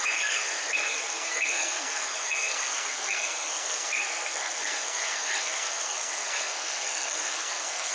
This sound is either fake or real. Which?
fake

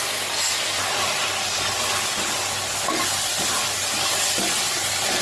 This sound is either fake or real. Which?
real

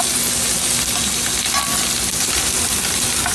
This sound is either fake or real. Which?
real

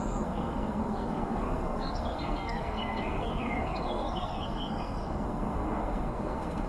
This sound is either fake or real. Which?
fake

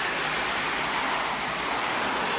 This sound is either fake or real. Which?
real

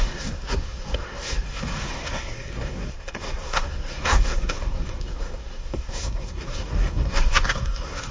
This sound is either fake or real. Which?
fake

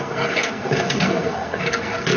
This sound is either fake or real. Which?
fake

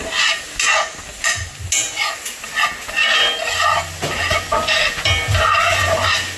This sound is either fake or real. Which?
real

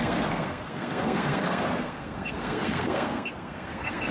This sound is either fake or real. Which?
fake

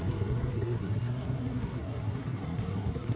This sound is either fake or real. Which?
fake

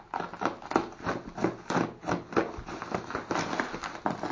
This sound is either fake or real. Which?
real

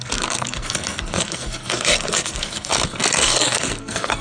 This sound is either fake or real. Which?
fake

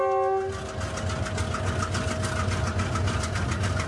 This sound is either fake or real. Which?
real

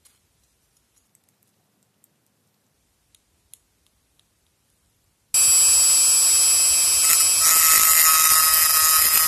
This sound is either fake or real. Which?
real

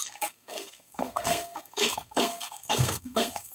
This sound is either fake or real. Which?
fake